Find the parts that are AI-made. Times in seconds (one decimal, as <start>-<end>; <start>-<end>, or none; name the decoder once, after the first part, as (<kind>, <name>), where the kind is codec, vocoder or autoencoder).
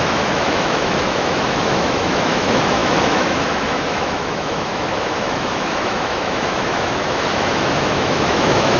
0.0-8.8 (autoencoder, DAC-VAE)